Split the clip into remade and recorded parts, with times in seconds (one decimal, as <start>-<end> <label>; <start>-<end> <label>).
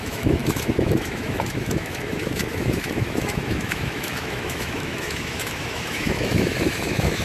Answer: 0.0-7.2 remade